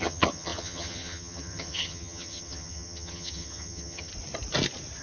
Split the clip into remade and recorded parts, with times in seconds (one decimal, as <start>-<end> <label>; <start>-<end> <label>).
0.0-4.1 remade; 4.1-5.0 recorded